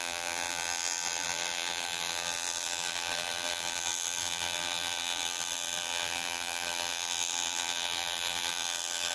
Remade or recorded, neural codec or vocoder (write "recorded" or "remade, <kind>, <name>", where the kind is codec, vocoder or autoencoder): remade, vocoder, BigVGAN v2